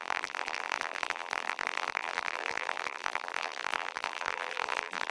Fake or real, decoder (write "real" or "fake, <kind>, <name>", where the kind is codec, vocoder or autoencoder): fake, vocoder, BigVGAN v2